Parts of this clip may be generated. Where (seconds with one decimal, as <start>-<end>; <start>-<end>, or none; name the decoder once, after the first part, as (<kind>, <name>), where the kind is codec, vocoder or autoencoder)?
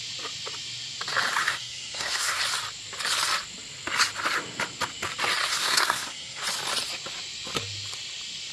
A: 1.4-2.4 (codec, SNAC); 5.5-6.4